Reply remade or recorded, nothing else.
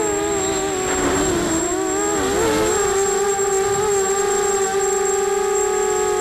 recorded